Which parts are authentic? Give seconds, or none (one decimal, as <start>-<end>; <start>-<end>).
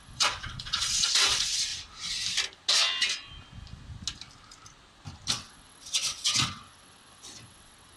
1.7-5.3